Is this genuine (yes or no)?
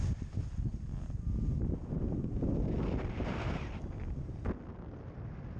yes